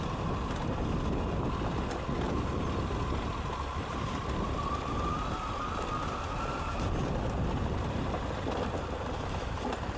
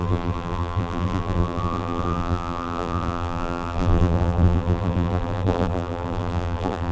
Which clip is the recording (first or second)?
first